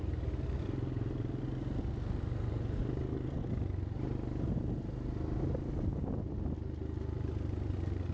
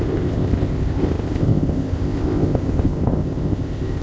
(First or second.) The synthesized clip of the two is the second